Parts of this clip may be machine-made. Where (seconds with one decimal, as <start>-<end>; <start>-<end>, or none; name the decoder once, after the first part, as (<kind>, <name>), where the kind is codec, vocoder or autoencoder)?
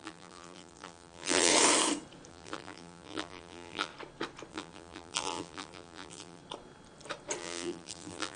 0.0-1.5 (vocoder, BigVGAN v2); 2.3-3.9; 4.5-6.4; 7.4-8.4